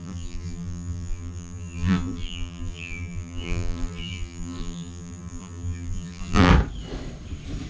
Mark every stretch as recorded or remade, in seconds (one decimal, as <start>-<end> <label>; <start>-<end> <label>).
0.0-6.5 remade; 6.5-7.7 recorded